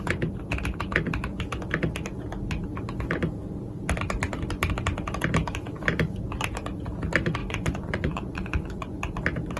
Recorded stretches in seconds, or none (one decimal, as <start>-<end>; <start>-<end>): 0.0-7.4; 9.0-9.6